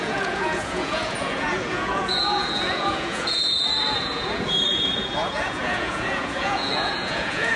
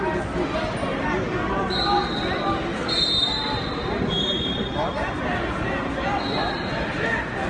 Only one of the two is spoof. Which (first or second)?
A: first